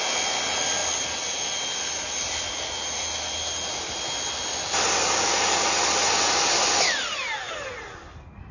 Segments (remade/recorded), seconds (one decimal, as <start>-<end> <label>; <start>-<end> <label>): 0.0-8.5 recorded